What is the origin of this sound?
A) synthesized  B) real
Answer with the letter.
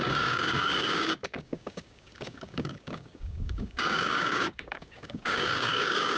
A